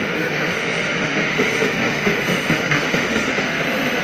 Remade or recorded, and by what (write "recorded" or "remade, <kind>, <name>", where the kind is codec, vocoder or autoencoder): remade, autoencoder, DAC-VAE